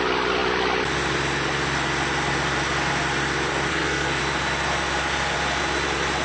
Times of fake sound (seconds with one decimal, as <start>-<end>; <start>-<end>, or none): 3.7-4.2